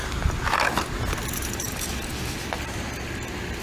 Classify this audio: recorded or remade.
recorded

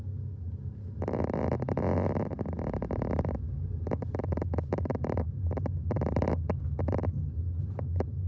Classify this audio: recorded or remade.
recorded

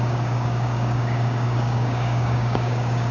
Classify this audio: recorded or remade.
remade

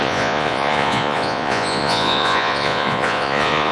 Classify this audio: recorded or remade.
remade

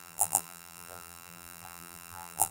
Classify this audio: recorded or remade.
remade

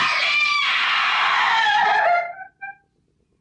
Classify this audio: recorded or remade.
recorded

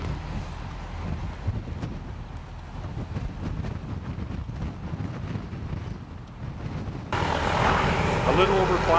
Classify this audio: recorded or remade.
recorded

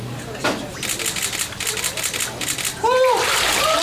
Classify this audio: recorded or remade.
recorded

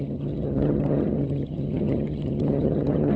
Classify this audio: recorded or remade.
remade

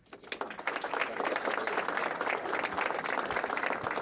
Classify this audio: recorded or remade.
recorded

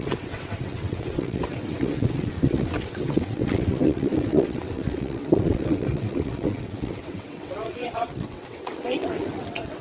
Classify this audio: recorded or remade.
remade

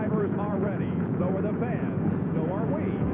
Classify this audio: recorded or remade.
remade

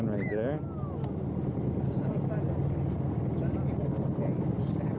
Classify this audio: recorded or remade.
recorded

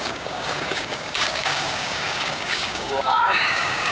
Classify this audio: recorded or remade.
remade